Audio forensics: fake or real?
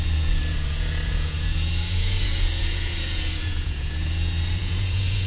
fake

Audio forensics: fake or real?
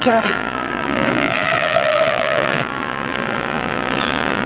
fake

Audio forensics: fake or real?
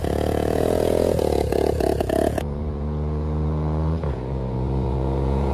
fake